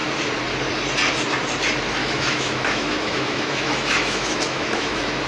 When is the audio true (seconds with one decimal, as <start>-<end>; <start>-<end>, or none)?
0.0-2.0